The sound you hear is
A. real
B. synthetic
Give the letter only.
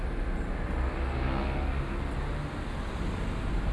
A